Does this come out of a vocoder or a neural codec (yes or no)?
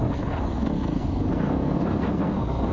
yes